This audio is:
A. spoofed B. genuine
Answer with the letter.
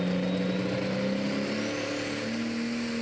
B